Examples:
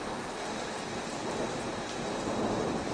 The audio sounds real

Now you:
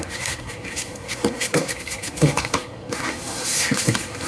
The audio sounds fake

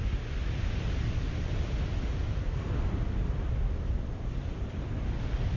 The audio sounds real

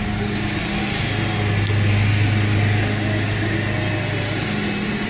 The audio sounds real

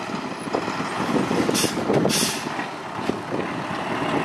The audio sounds real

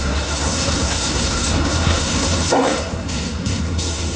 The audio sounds fake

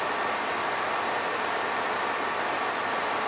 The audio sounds real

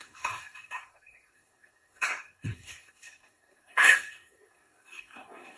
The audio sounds fake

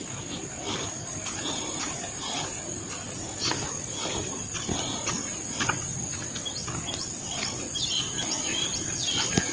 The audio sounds real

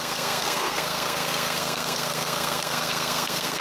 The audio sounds fake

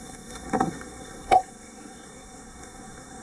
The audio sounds fake